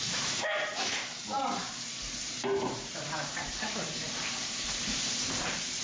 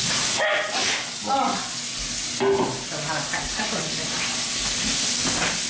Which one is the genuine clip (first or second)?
second